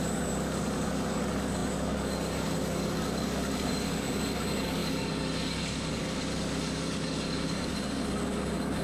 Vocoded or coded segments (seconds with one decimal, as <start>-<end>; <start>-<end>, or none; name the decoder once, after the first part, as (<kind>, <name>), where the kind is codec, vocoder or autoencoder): 0.0-8.8 (codec, DAC)